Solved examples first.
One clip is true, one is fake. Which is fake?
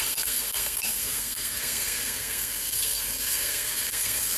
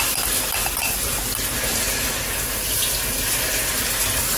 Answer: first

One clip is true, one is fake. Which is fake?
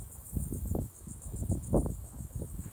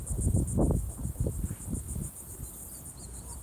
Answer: first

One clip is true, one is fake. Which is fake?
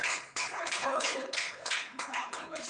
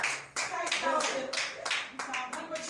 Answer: first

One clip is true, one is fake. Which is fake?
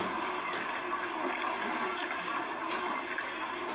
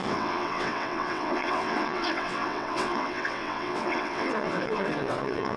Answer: second